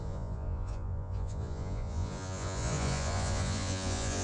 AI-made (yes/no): yes